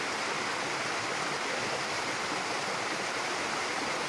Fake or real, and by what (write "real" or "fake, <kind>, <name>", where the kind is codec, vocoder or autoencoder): real